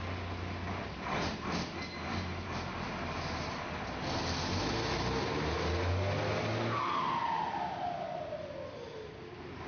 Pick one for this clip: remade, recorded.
recorded